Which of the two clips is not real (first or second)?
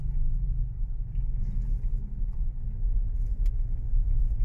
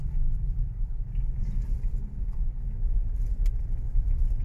second